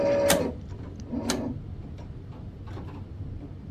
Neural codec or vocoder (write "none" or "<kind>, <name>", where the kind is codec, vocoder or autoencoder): none